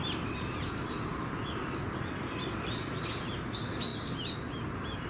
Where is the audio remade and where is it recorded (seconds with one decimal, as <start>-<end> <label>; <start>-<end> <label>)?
0.0-3.1 remade; 3.1-5.1 recorded